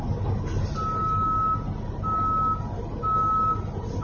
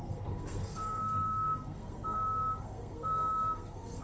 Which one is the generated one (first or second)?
second